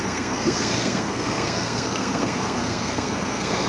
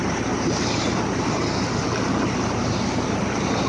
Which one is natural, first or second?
second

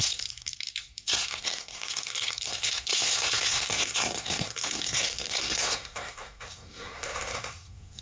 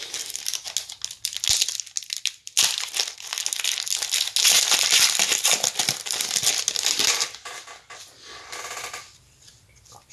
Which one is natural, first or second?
second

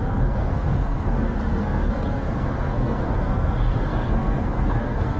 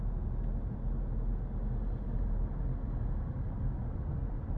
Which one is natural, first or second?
second